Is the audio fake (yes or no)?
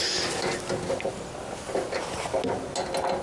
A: no